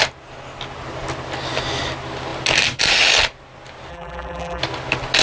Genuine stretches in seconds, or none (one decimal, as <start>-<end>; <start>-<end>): 0.0-3.9; 4.6-5.2